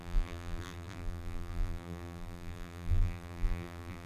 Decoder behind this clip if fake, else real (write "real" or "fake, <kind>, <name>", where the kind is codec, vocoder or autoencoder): fake, vocoder, BigVGAN v2